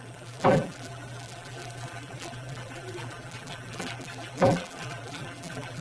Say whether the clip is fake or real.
fake